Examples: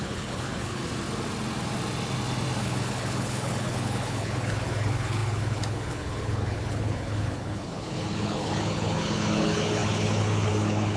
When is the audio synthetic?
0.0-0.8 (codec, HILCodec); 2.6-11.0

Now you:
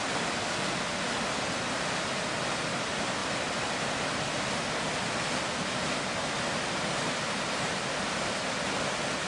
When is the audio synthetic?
none

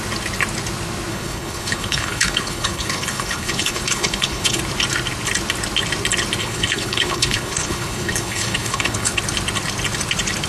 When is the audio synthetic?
1.1-4.6 (codec, HILCodec); 6.4-9.2

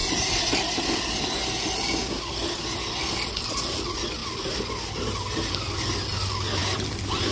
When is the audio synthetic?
none

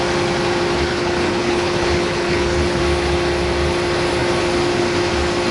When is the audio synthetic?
0.9-2.8 (codec, HILCodec)

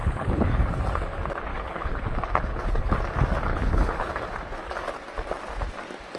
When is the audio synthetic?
0.0-0.6 (codec, HILCodec); 1.5-2.0; 2.5-3.0; 3.5-4.1

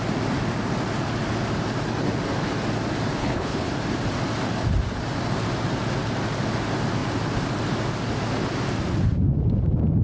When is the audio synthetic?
3.2-3.7 (codec, HILCodec)

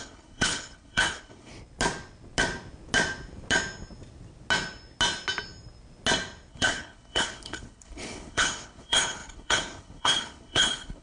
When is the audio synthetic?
0.0-1.5 (codec, HILCodec); 6.5-11.0